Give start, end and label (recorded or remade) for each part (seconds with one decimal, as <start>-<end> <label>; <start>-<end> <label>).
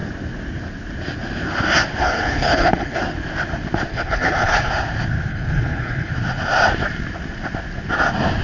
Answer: 0.0-2.0 recorded; 2.0-3.0 remade; 3.0-3.9 recorded; 3.9-4.7 remade; 4.7-5.3 recorded; 5.3-6.1 remade; 6.1-8.4 recorded